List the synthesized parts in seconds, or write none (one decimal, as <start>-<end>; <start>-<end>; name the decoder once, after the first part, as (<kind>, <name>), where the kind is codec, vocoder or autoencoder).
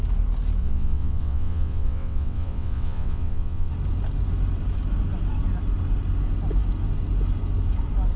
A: 0.6-3.7 (vocoder, WaveNeXt)